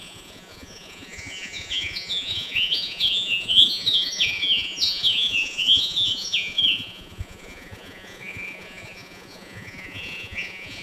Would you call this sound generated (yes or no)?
yes